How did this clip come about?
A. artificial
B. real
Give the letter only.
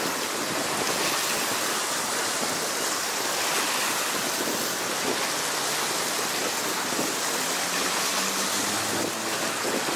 B